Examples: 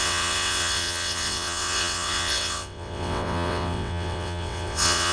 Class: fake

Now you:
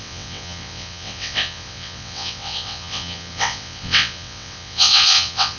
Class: fake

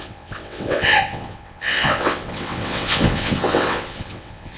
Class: fake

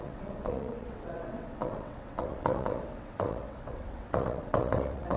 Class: fake